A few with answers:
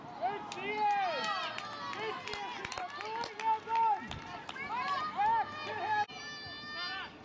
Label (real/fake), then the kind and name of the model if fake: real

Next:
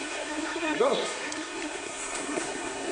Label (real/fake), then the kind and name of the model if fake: fake, codec, SNAC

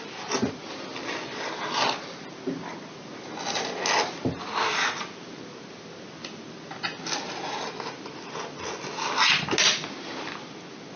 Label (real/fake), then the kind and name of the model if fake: real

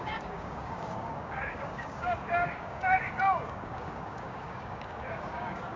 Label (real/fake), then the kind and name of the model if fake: fake, codec, DAC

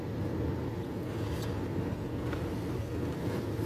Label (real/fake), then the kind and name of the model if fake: real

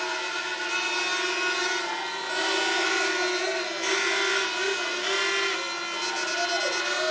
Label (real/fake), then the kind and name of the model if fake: real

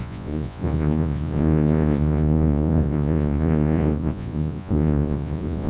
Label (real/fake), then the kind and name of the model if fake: fake, vocoder, Vocos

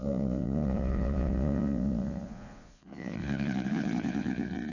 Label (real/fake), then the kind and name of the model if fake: fake, vocoder, Vocos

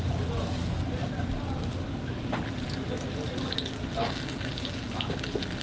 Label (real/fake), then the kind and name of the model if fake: real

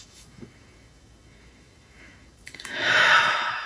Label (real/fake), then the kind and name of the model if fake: fake, autoencoder, DAC-VAE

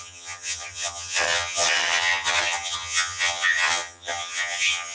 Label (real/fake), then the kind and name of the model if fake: fake, vocoder, HiFi-GAN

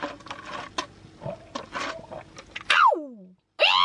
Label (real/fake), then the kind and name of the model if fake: real